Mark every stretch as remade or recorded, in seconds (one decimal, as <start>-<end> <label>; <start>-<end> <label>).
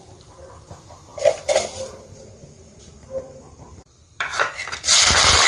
0.0-1.1 recorded; 1.1-4.4 remade; 4.4-5.5 recorded